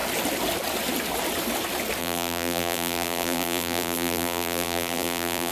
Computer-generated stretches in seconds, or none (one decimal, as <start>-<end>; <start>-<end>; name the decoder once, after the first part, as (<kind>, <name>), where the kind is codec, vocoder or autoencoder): 2.0-5.5 (vocoder, BigVGAN v2)

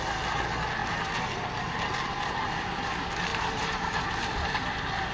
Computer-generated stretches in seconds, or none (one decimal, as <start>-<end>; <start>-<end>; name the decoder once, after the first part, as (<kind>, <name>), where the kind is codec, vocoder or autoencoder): 3.3-4.0 (vocoder, BigVGAN v2)

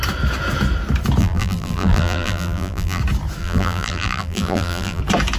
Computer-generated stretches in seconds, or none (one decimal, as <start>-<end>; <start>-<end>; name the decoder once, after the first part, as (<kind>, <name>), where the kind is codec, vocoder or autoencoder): 1.2-3.0 (vocoder, BigVGAN v2); 3.4-5.0

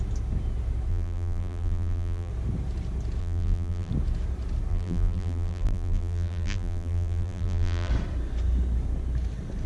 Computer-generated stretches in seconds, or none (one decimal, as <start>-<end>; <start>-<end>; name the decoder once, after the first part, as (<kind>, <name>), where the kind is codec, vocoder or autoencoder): 0.9-2.3 (vocoder, BigVGAN v2); 3.2-3.9; 4.7-7.9